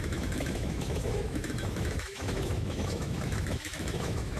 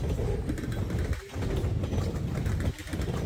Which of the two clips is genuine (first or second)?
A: second